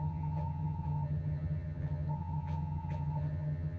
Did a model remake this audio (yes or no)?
yes